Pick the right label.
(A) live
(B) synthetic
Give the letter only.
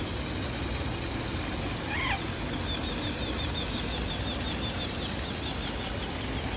A